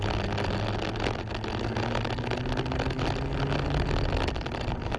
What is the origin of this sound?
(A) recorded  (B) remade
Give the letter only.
A